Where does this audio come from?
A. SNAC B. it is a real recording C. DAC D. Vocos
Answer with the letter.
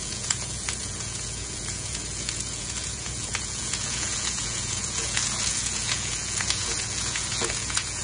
D